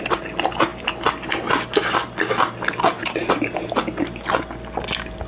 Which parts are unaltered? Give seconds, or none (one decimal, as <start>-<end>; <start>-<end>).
0.0-5.3